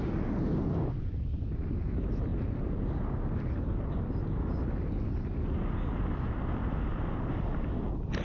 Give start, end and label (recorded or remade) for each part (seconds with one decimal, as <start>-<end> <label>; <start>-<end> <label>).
0.0-8.2 recorded